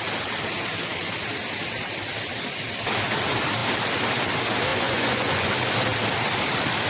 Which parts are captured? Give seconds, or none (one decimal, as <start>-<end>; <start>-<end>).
0.0-4.7; 5.5-6.9